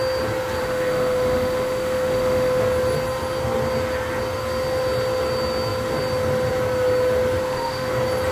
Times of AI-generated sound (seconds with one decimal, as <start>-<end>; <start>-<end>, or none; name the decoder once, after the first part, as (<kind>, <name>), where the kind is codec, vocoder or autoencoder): 0.6-2.6 (autoencoder, DAC-VAE); 7.4-7.9